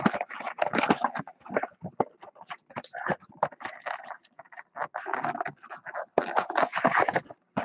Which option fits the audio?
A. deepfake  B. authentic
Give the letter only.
B